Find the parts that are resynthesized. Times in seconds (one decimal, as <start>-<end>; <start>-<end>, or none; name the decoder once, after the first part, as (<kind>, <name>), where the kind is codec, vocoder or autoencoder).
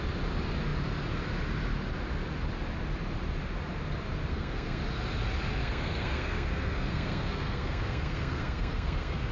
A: 4.3-4.8 (codec, SNAC); 5.6-9.3